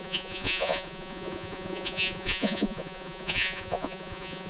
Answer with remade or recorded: remade